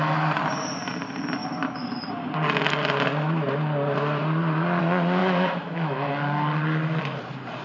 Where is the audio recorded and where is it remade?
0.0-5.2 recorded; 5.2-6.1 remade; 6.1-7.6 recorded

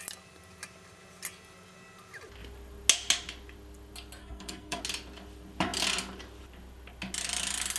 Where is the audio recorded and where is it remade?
0.0-4.2 recorded; 4.2-4.8 remade; 4.8-7.8 recorded

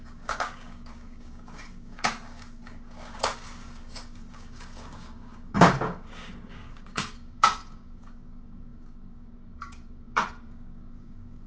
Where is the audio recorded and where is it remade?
0.0-11.5 remade

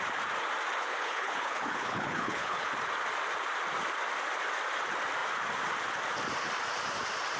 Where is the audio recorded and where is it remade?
0.0-0.8 recorded; 0.8-2.7 remade; 2.7-7.4 recorded

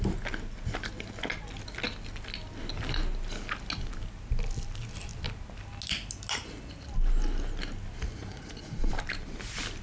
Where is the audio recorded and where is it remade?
0.0-8.3 recorded; 8.3-8.9 remade; 8.9-9.8 recorded